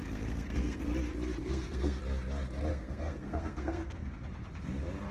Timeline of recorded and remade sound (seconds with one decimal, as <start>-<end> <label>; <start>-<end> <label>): 0.0-0.8 remade; 0.8-1.4 recorded; 1.4-2.0 remade; 2.0-2.7 recorded; 2.7-4.1 remade; 4.1-5.1 recorded

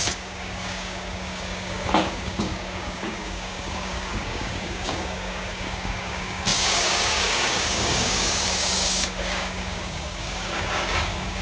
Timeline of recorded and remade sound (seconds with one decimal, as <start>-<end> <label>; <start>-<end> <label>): 0.0-11.4 remade

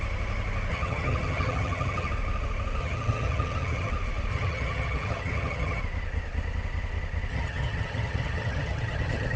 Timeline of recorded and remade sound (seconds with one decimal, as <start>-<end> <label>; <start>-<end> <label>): 0.0-0.7 recorded; 0.7-2.1 remade; 2.1-2.8 recorded; 2.8-3.9 remade; 3.9-4.3 recorded; 4.3-5.8 remade; 5.8-7.3 recorded; 7.3-9.4 remade

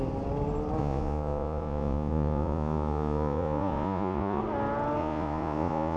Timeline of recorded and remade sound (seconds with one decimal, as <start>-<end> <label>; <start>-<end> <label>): 0.0-0.8 recorded; 0.8-4.4 remade; 4.4-5.0 recorded; 5.0-6.0 remade

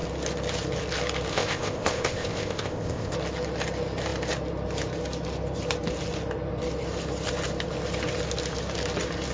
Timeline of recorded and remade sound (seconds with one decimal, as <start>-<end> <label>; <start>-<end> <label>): 0.0-1.3 recorded; 1.3-3.1 remade; 3.1-9.3 recorded

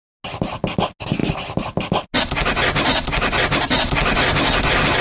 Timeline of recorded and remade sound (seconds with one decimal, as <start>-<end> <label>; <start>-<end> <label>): 0.0-5.0 recorded

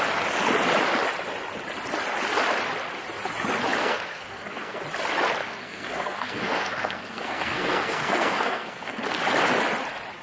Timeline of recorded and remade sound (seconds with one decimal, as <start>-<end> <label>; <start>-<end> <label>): 0.0-3.8 recorded; 3.8-4.8 remade; 4.8-5.4 recorded; 5.4-9.2 remade; 9.2-10.2 recorded

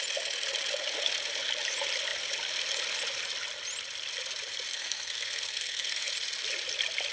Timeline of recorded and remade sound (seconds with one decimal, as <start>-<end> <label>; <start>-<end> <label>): 0.0-4.7 recorded; 4.7-6.1 remade; 6.1-7.1 recorded